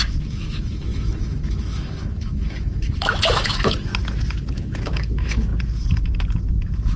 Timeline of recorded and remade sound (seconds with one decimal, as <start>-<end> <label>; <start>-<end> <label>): 0.0-3.9 remade; 3.9-4.5 recorded; 4.5-5.5 remade; 5.5-6.5 recorded; 6.5-7.0 remade